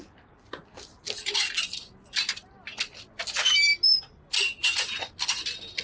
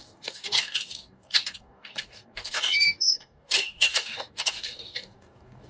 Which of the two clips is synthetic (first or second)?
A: second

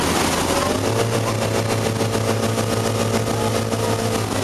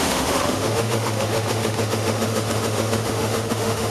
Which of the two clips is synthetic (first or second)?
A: second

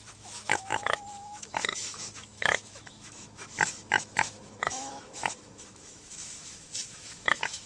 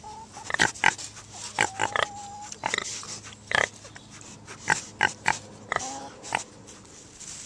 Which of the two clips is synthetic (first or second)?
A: first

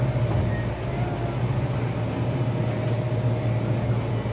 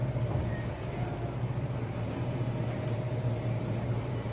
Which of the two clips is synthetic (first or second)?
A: second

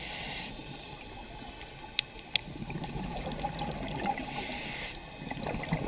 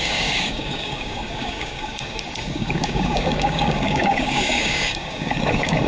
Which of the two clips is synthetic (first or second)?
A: second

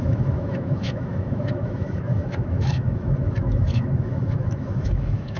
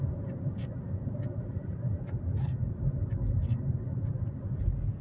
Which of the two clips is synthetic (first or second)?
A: first